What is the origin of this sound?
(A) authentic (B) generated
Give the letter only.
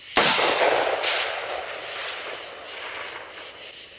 A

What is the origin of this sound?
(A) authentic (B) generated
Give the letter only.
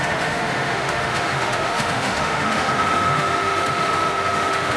B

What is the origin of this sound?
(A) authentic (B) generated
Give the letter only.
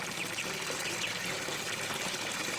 A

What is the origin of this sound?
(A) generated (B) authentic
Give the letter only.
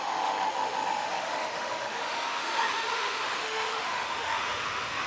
A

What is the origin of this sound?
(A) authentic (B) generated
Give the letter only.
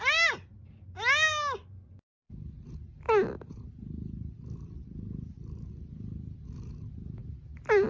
A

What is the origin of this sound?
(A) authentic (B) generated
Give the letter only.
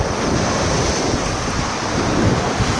A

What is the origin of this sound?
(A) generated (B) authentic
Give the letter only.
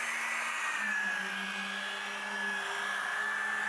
B